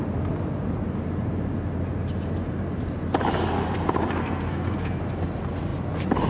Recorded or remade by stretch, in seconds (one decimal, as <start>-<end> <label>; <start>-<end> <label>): 0.0-4.2 recorded; 4.2-5.0 remade; 5.0-6.3 recorded